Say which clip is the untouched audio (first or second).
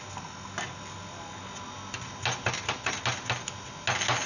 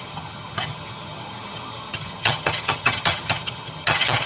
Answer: first